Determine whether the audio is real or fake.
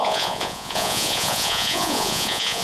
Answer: fake